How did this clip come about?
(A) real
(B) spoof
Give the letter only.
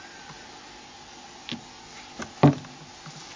A